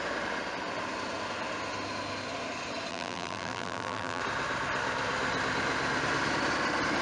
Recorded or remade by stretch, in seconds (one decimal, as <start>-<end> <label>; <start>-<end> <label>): 0.0-2.9 recorded; 2.9-4.2 remade; 4.2-7.0 recorded

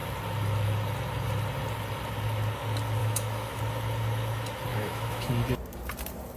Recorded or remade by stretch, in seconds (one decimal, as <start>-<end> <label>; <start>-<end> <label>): 0.0-3.0 recorded; 3.0-3.6 remade; 3.6-4.7 recorded; 4.7-5.3 remade; 5.3-6.4 recorded

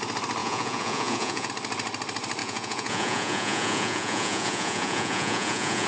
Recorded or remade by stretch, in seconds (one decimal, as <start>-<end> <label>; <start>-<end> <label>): 0.0-0.4 recorded; 0.4-1.5 remade; 1.5-2.4 recorded; 2.4-5.9 remade

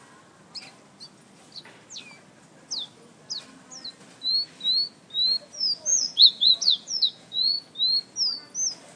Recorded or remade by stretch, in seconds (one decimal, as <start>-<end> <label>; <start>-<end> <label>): 0.0-5.9 recorded; 5.9-7.7 remade; 7.7-9.0 recorded

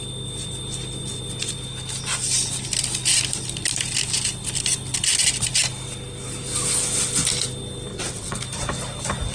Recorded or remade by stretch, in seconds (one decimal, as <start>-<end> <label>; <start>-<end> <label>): 0.0-7.9 recorded; 7.9-8.4 remade; 8.4-9.3 recorded

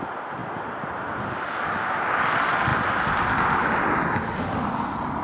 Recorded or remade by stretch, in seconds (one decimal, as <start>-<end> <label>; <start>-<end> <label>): 0.0-5.2 recorded

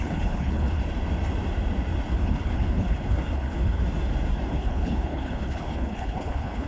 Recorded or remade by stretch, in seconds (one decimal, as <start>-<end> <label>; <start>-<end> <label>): 0.0-0.8 remade; 0.8-2.1 recorded; 2.1-3.8 remade; 3.8-4.5 recorded; 4.5-6.7 remade